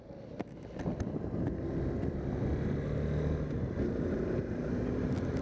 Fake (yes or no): no